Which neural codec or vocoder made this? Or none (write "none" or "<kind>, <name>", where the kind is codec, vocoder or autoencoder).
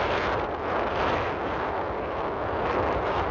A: none